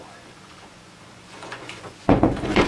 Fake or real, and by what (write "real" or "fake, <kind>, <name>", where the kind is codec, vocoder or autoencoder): fake, vocoder, Vocos